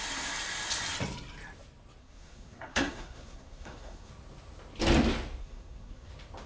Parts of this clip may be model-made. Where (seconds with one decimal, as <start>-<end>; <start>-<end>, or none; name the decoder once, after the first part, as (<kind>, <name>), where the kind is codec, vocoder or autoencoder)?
2.0-4.1 (codec, SNAC); 5.4-6.1